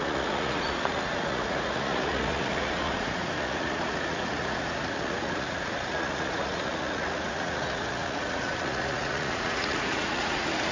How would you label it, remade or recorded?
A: remade